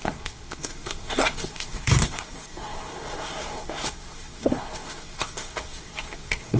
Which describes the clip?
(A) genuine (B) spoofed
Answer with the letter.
B